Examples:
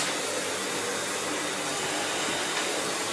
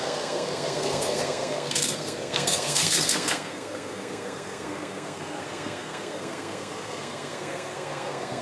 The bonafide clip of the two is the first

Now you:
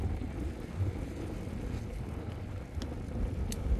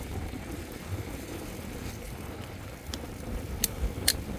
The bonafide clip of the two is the first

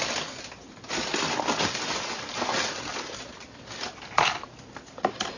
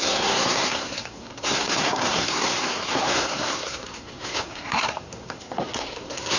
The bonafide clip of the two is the first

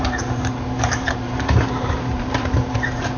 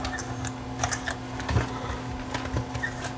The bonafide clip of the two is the second